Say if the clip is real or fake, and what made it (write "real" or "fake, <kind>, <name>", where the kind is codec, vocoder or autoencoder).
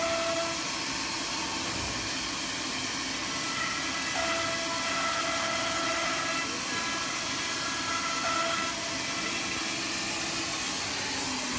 real